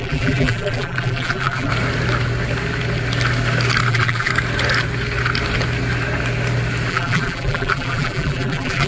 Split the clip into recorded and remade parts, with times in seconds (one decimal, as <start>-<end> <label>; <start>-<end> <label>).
0.0-1.7 remade; 1.7-3.9 recorded; 3.9-4.3 remade; 4.3-6.9 recorded; 6.9-8.9 remade